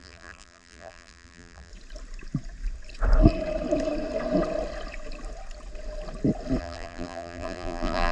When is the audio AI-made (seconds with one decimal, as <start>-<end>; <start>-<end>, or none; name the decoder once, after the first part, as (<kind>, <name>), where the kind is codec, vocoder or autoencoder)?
0.0-1.7 (vocoder, BigVGAN v2); 6.6-8.1